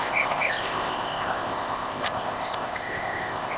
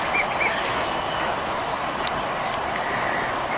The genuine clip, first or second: second